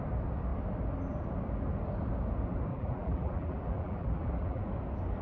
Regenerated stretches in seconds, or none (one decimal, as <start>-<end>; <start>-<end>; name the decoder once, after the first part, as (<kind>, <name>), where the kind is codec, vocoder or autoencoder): 2.7-4.6 (vocoder, BigVGAN v2)